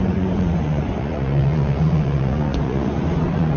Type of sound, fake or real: fake